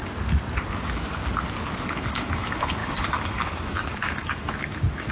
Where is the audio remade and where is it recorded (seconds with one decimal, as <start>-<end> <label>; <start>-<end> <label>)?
0.0-1.8 recorded; 1.8-5.1 remade